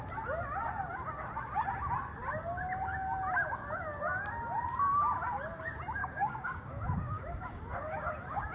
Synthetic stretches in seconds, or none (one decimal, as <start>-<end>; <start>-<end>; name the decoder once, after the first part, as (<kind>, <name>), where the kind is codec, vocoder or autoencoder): 6.0-8.5 (codec, DAC)